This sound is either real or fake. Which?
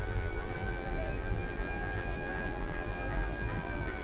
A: fake